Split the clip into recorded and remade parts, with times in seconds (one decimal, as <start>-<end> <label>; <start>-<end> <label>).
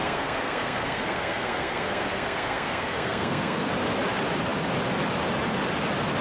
0.0-3.7 remade; 3.7-6.2 recorded